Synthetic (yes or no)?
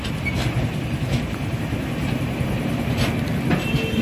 no